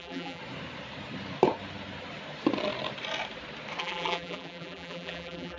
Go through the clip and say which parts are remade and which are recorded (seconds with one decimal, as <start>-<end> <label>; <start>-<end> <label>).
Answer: 0.0-0.4 remade; 0.4-3.8 recorded; 3.8-5.6 remade